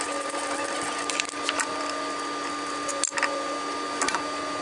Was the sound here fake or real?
real